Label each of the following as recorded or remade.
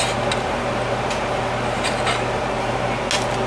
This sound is recorded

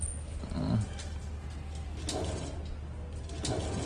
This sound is recorded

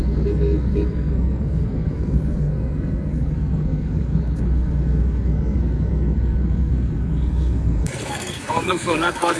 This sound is remade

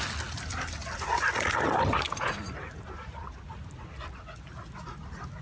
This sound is recorded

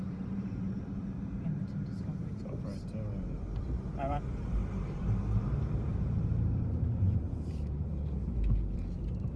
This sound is remade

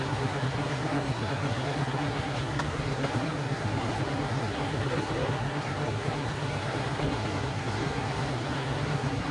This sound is remade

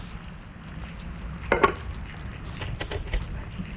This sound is recorded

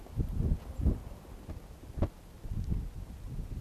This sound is recorded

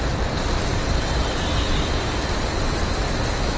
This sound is recorded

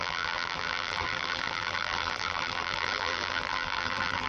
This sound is remade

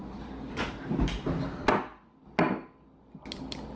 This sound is recorded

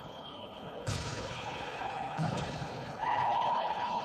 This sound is remade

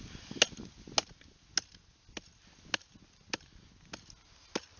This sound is recorded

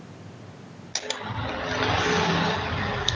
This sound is recorded